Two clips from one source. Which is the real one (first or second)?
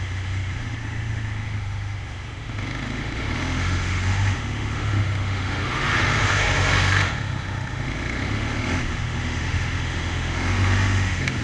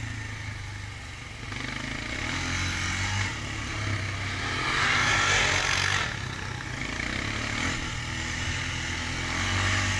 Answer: second